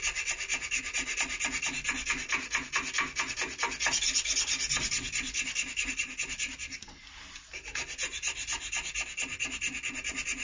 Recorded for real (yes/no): yes